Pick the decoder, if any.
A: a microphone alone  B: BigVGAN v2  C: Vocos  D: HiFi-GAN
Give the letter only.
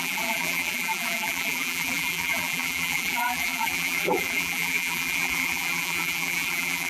B